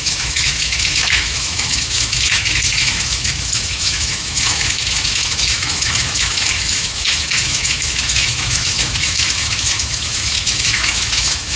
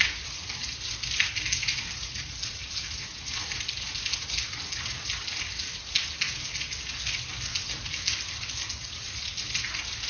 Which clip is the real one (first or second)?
second